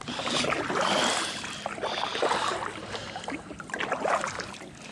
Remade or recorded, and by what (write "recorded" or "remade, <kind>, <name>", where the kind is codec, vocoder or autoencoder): recorded